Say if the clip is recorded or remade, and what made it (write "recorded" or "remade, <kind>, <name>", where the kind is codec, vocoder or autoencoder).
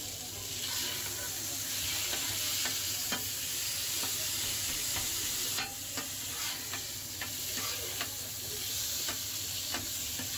recorded